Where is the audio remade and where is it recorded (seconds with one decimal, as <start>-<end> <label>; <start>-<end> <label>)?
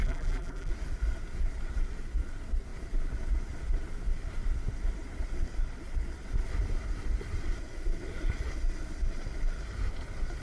0.0-0.7 remade; 0.7-10.4 recorded